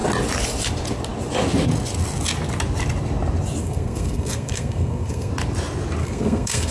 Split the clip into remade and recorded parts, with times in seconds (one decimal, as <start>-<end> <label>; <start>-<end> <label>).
0.0-3.6 recorded; 3.6-5.3 remade; 5.3-6.0 recorded; 6.0-6.7 remade